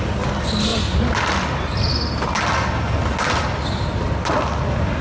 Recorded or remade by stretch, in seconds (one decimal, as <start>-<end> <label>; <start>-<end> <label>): 0.0-5.0 recorded

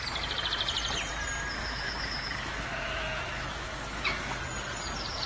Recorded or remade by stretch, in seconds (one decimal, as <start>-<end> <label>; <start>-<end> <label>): 0.0-1.6 recorded; 1.6-4.4 remade; 4.4-5.3 recorded

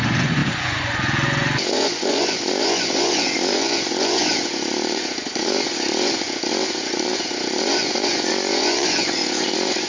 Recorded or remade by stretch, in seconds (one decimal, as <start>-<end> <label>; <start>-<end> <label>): 0.0-9.9 remade